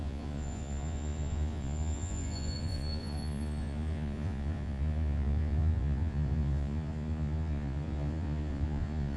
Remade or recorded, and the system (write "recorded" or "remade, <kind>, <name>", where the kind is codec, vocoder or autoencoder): remade, vocoder, Vocos